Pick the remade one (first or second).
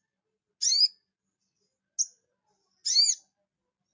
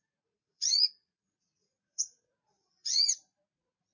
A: second